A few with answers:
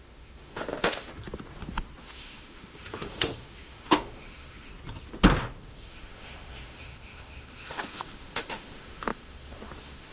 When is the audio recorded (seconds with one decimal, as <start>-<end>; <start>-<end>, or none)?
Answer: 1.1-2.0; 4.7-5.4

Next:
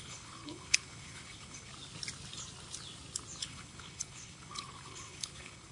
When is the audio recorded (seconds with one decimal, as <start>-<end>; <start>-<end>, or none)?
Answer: 1.7-3.4

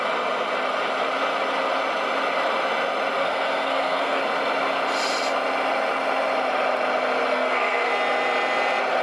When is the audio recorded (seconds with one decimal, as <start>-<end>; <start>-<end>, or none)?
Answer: 0.0-3.2; 4.2-7.3; 7.9-9.0